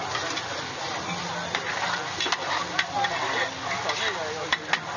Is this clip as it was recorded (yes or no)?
yes